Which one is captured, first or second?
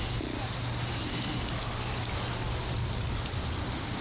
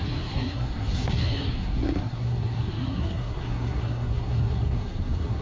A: first